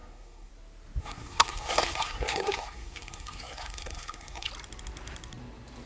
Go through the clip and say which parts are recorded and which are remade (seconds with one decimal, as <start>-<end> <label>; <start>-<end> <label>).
0.0-0.5 remade; 0.5-1.0 recorded; 1.0-4.5 remade; 4.5-5.9 recorded